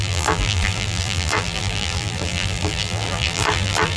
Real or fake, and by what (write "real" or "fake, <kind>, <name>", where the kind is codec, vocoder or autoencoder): fake, vocoder, BigVGAN v2